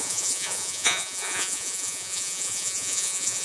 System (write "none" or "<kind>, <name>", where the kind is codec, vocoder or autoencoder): vocoder, Vocos